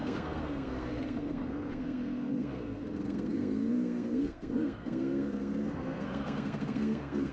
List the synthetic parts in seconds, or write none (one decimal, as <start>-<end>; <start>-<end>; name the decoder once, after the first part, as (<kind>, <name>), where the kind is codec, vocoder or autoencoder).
0.0-7.3 (codec, SNAC)